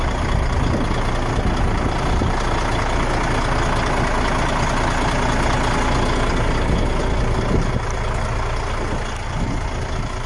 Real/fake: real